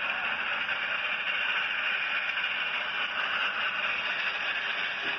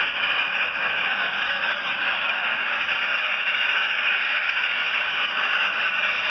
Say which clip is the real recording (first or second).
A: first